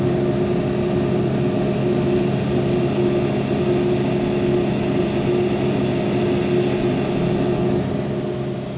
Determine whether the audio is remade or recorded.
recorded